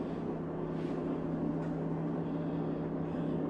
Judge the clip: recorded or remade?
recorded